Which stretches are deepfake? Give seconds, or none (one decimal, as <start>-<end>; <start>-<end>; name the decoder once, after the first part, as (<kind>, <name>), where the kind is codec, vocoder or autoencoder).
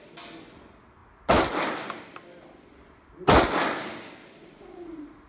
4.2-5.3 (vocoder, Vocos)